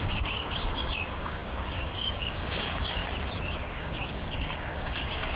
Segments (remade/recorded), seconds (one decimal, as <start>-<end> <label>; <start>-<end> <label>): 0.0-3.0 remade; 3.0-3.7 recorded; 3.7-5.4 remade